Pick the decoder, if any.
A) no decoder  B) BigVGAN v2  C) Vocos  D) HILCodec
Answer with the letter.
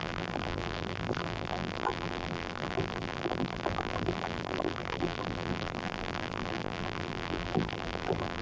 B